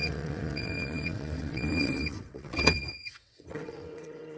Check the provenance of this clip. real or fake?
fake